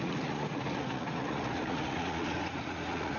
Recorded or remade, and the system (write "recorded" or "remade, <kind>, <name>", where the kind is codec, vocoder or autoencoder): remade, vocoder, Vocos